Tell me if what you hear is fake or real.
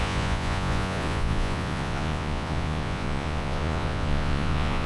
fake